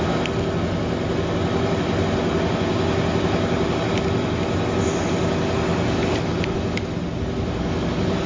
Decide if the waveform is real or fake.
real